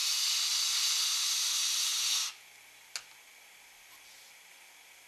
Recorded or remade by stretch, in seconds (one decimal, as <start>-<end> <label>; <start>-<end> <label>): 0.0-5.1 recorded